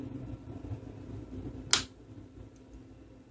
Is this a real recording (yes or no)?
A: yes